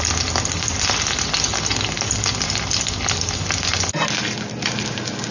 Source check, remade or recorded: recorded